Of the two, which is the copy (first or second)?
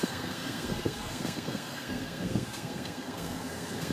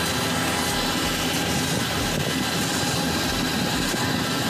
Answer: first